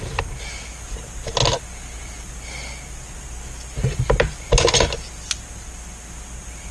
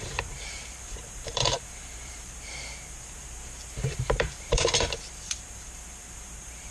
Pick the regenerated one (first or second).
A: second